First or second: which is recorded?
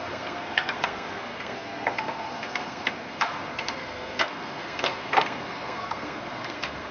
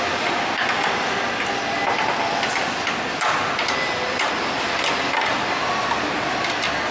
second